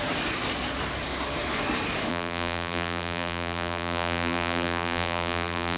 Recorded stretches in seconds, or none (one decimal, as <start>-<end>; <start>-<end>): 0.0-2.1